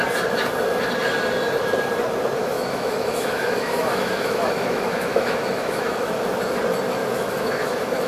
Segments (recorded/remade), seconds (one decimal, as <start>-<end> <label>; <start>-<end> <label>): 0.0-2.4 recorded; 2.4-6.1 remade; 6.1-7.0 recorded; 7.0-8.1 remade